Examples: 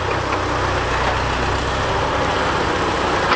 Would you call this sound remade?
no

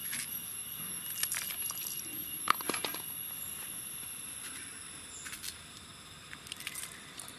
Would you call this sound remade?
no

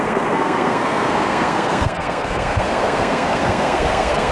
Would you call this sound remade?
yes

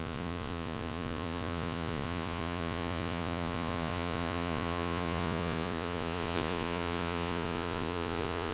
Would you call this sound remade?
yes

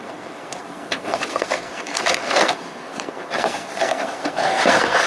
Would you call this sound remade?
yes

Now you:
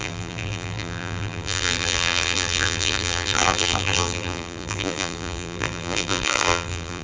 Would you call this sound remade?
yes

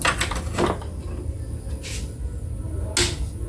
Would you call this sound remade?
no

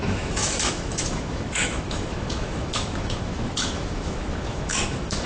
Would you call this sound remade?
yes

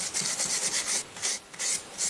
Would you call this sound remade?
no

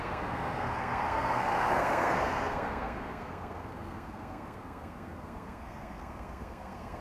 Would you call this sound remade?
yes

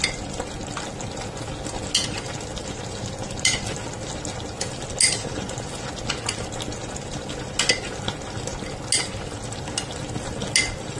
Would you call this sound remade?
no